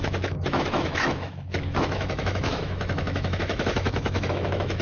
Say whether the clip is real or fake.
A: fake